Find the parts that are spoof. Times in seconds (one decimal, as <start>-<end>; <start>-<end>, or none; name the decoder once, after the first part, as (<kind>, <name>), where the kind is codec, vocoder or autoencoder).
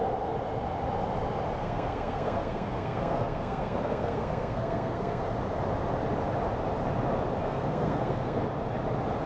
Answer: 1.6-5.2 (codec, SNAC); 7.4-8.4